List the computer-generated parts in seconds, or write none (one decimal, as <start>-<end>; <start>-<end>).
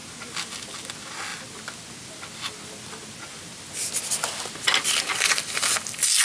none